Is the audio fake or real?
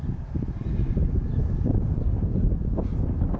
real